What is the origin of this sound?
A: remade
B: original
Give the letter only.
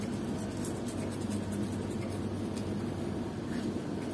B